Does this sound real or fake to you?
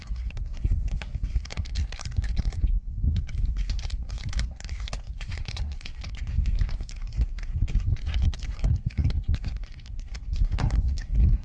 fake